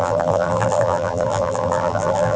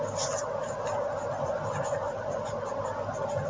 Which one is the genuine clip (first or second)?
second